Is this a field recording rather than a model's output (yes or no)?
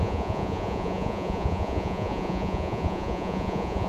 no